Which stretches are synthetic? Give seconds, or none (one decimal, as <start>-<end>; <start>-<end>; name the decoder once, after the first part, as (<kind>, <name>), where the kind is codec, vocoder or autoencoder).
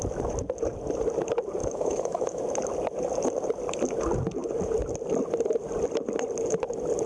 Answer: 1.6-2.4 (autoencoder, DAC-VAE)